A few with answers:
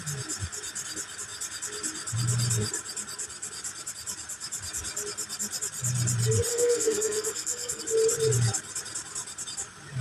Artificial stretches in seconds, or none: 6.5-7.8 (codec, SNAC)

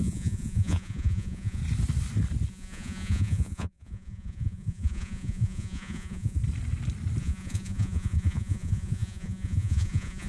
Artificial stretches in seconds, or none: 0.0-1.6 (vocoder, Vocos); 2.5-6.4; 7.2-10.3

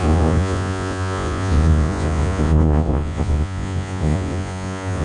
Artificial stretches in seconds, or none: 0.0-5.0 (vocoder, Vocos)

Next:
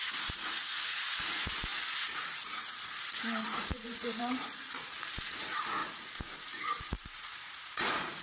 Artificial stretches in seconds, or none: 0.0-8.2 (vocoder, Vocos)